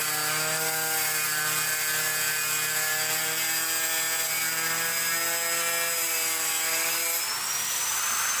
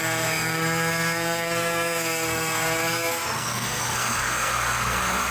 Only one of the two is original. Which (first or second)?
first